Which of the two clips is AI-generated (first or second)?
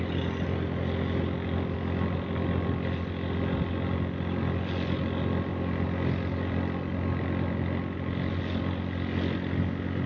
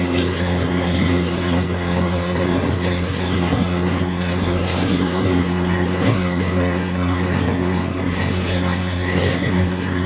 second